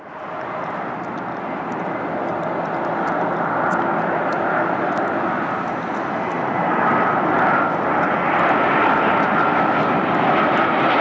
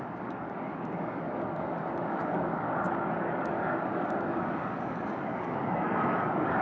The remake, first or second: second